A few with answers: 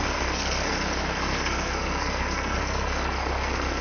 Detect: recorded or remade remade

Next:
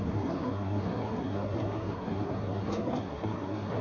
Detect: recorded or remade remade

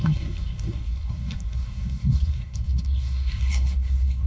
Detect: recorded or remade remade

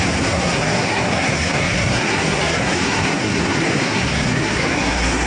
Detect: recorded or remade remade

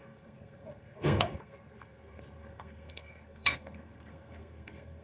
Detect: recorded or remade remade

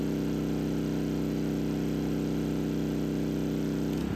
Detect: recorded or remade recorded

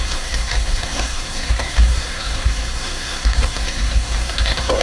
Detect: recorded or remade remade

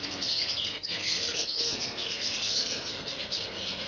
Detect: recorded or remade remade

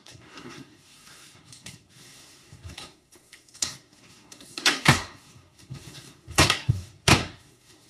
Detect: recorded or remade remade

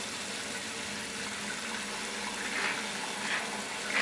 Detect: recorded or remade recorded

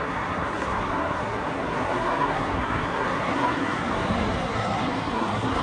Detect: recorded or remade remade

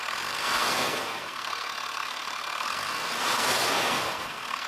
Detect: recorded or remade remade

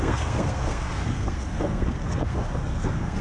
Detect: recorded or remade remade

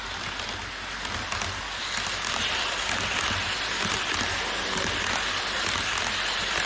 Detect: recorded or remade recorded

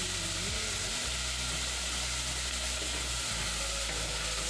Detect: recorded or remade recorded